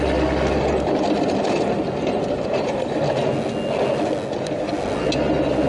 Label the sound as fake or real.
real